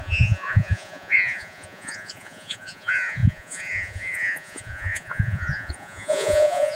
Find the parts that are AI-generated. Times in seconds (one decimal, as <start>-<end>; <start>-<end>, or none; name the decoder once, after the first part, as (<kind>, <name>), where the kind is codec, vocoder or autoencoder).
0.0-6.8 (vocoder, Vocos)